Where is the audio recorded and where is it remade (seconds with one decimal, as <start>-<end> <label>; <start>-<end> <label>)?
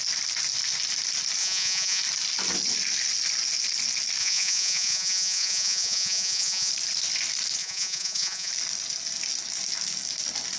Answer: 0.0-1.4 recorded; 1.4-2.0 remade; 2.0-4.2 recorded; 4.2-6.7 remade; 6.7-7.6 recorded; 7.6-8.5 remade; 8.5-10.6 recorded